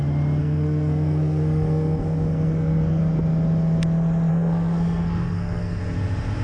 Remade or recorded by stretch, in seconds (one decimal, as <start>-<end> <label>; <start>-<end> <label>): 0.0-0.4 recorded; 0.4-3.0 remade; 3.0-4.3 recorded; 4.3-5.8 remade; 5.8-6.4 recorded